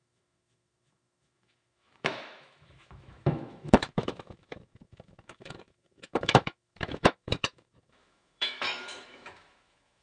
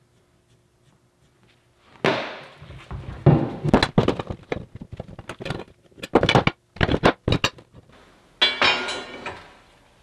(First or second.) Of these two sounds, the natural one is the second